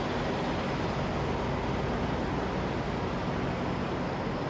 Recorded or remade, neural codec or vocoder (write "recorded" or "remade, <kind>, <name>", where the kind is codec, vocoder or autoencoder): recorded